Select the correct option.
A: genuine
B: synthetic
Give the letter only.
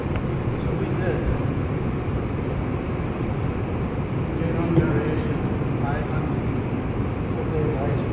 A